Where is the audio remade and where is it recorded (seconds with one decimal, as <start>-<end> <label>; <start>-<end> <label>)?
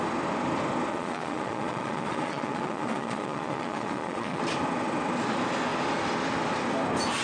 0.0-0.9 recorded; 0.9-4.4 remade; 4.4-7.2 recorded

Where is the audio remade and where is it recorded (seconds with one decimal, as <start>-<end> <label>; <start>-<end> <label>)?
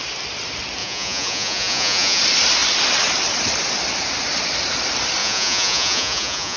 0.0-0.8 recorded; 0.8-2.2 remade; 2.2-5.2 recorded; 5.2-6.6 remade